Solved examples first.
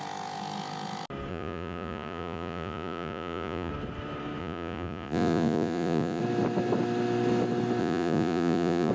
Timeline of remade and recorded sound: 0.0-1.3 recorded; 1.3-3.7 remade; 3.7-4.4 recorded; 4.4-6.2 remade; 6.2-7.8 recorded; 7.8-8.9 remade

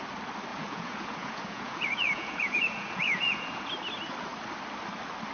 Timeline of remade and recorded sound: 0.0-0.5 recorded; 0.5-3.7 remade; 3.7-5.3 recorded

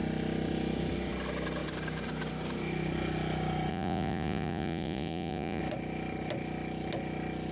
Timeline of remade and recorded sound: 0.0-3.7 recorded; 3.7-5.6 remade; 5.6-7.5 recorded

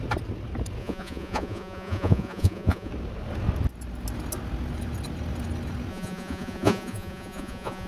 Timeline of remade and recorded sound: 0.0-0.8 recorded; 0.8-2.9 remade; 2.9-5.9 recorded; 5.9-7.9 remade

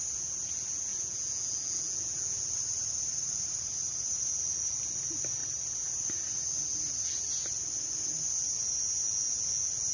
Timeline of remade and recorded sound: 0.0-0.9 recorded; 0.9-2.4 remade; 2.4-9.9 recorded

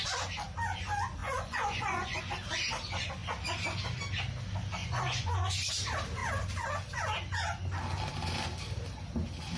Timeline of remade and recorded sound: 0.0-1.2 recorded; 1.2-2.2 remade; 2.2-4.8 recorded; 4.8-5.7 remade; 5.7-9.6 recorded

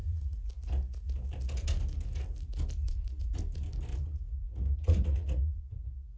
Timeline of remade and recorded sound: 0.0-0.5 remade; 0.5-2.8 recorded; 2.8-3.4 remade; 3.4-3.9 recorded; 3.9-5.6 remade; 5.6-6.2 recorded

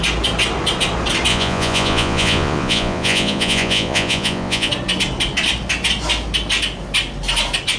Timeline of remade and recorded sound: 0.0-1.3 recorded; 1.3-4.7 remade; 4.7-7.8 recorded